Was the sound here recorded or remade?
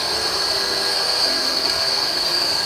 remade